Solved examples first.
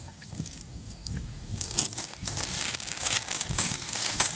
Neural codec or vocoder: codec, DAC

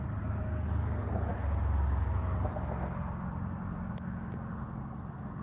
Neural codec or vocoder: none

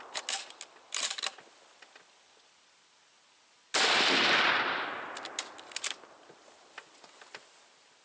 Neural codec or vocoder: none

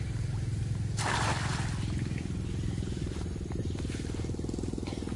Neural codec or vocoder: none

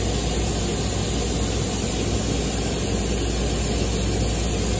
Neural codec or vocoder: none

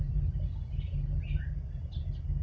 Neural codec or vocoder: none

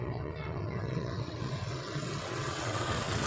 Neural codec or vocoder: vocoder, WaveNeXt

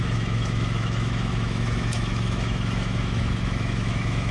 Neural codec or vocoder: autoencoder, DAC-VAE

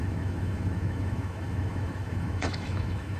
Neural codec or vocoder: autoencoder, DAC-VAE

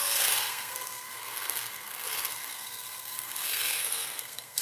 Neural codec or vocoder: codec, SNAC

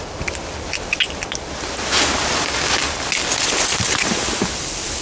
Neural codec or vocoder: none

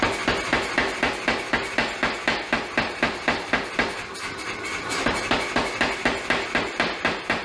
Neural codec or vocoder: none